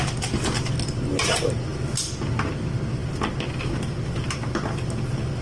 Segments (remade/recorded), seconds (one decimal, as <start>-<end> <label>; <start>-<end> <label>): 0.0-5.4 recorded